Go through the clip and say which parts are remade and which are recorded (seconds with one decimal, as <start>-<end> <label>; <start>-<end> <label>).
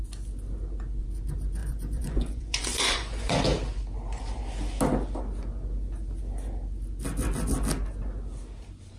0.0-1.6 recorded; 1.6-3.4 remade; 3.4-9.0 recorded